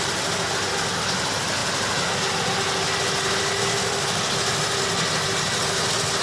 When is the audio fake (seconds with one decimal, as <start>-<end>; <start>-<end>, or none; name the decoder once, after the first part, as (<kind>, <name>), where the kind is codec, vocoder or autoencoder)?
none

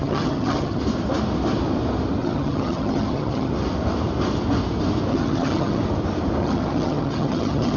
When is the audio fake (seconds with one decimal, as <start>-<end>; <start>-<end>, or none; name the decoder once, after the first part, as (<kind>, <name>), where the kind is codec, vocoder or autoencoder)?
0.0-0.8 (vocoder, HiFi-GAN); 2.2-3.5; 5.1-5.8; 6.4-7.8